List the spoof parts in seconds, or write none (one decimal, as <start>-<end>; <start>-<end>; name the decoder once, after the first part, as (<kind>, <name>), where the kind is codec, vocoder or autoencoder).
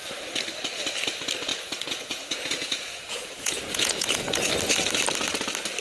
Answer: 1.5-4.5 (vocoder, Vocos)